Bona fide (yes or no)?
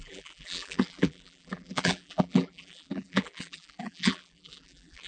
no